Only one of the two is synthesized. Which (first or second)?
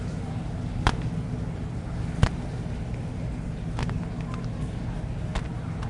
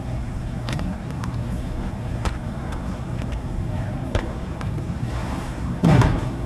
second